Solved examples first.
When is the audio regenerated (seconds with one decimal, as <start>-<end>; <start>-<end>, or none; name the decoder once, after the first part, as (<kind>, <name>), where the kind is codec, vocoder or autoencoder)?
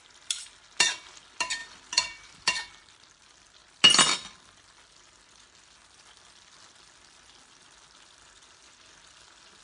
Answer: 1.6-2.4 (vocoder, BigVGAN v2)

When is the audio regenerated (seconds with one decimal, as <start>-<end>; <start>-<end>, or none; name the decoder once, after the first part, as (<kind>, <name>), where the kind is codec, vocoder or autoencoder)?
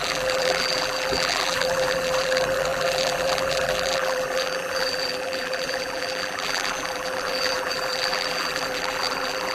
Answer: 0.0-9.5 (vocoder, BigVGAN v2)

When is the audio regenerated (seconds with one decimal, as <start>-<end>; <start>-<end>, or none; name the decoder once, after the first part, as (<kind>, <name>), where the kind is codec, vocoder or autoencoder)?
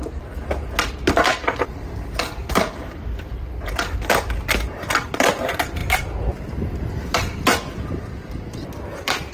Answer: 5.8-6.4 (vocoder, BigVGAN v2)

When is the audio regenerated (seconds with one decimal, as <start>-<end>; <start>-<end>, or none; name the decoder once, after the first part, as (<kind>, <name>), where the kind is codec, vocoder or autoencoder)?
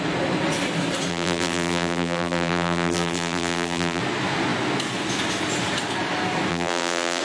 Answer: 1.1-4.0 (vocoder, BigVGAN v2); 6.5-7.2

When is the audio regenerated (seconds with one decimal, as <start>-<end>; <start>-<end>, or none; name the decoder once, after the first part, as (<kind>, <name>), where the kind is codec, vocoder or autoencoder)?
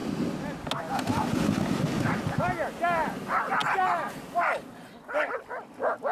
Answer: none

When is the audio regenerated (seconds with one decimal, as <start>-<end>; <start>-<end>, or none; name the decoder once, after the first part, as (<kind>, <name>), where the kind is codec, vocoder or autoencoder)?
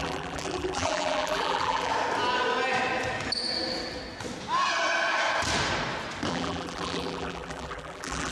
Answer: 0.0-1.9 (vocoder, BigVGAN v2); 6.3-8.3